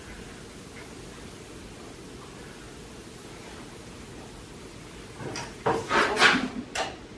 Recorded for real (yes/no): yes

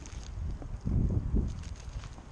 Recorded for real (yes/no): yes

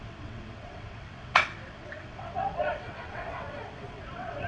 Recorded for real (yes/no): no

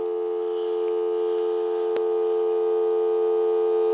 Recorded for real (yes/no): yes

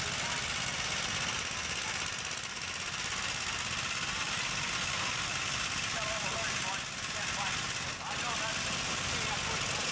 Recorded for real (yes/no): yes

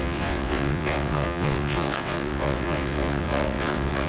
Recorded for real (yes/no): no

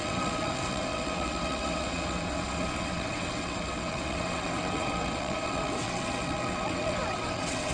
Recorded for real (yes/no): no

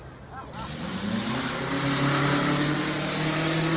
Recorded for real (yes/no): yes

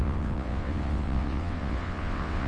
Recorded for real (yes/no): no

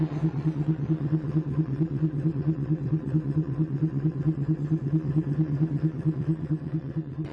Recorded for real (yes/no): no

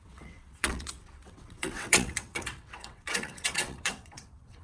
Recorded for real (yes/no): no